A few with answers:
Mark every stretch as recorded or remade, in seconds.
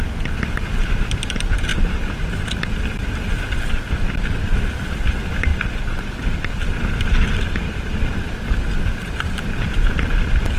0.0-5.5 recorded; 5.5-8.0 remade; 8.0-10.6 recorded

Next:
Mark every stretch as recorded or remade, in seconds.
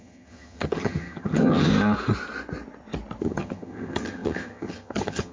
0.0-1.7 remade; 1.7-3.2 recorded; 3.2-5.3 remade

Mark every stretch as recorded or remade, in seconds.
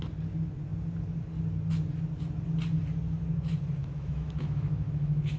0.0-3.8 recorded; 3.8-5.4 remade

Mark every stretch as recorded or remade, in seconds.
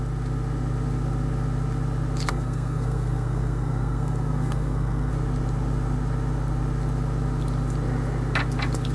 0.0-2.3 recorded; 2.3-5.1 remade; 5.1-8.9 recorded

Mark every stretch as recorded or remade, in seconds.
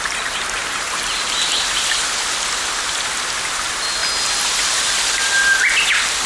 0.0-6.3 recorded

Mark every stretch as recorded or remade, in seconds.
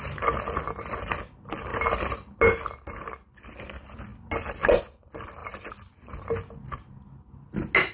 0.0-7.9 recorded